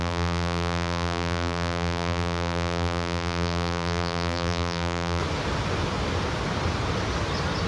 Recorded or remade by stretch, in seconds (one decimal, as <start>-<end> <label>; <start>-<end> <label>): 0.0-5.2 remade; 5.2-7.7 recorded